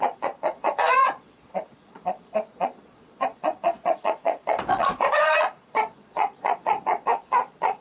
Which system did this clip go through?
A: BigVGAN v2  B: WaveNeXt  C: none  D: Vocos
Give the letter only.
D